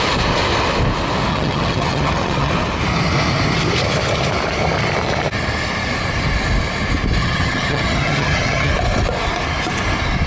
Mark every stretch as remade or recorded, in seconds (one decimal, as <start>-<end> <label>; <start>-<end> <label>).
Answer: 0.0-1.3 recorded; 1.3-2.5 remade; 2.5-7.2 recorded; 7.2-8.7 remade; 8.7-10.3 recorded

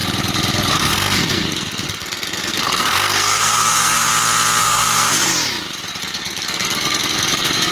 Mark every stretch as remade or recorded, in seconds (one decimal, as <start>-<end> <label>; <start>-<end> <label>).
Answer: 0.0-0.7 recorded; 0.7-4.1 remade; 4.1-4.6 recorded; 4.6-5.3 remade; 5.3-6.0 recorded; 6.0-7.7 remade